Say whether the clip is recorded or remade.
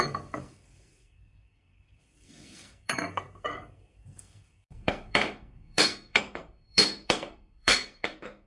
remade